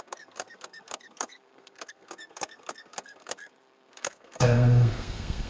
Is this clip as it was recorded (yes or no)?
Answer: no